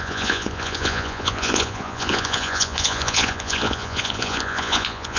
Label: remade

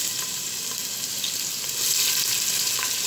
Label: recorded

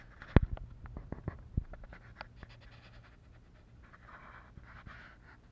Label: recorded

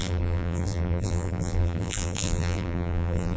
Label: remade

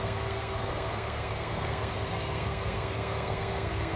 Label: remade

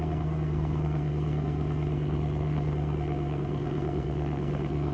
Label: remade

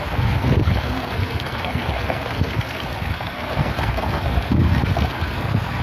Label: remade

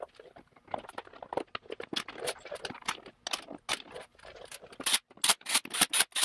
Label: recorded